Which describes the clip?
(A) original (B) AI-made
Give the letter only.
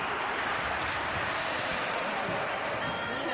A